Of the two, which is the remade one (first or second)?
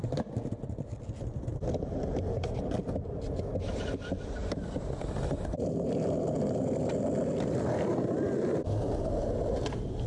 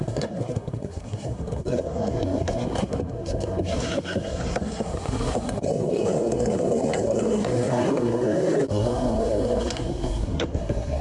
second